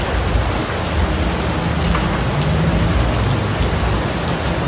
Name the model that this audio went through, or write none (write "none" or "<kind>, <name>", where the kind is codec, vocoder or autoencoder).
none